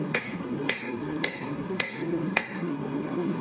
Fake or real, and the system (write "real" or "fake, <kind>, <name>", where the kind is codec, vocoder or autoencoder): fake, codec, SNAC